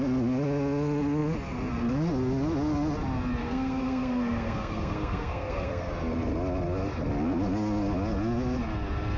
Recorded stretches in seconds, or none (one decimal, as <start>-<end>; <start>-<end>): 0.0-3.4; 5.9-9.2